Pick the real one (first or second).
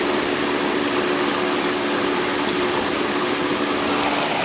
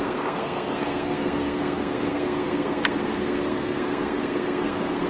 first